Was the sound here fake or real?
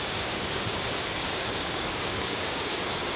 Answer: fake